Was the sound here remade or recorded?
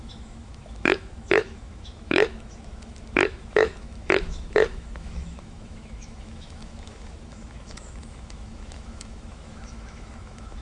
remade